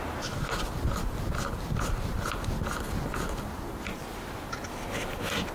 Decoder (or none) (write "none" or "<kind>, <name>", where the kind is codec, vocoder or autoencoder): none